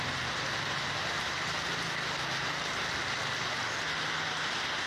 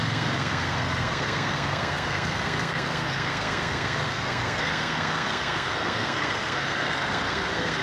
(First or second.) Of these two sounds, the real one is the first